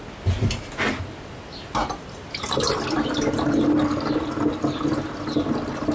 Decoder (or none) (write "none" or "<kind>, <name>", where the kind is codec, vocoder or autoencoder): none